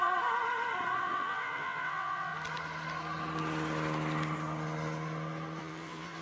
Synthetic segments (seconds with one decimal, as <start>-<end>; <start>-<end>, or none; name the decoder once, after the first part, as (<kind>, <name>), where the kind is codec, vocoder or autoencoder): 1.0-2.3 (vocoder, WaveNeXt); 5.6-6.2